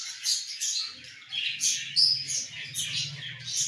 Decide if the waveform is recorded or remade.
recorded